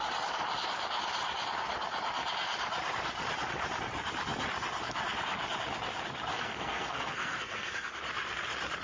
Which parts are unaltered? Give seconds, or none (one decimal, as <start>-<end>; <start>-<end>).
0.0-6.3; 7.9-8.8